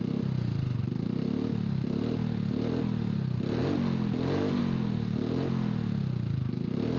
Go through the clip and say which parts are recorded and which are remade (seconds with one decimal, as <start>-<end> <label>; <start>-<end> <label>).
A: 0.0-7.0 recorded